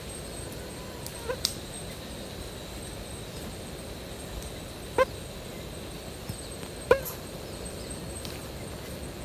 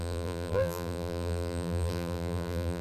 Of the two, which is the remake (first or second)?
second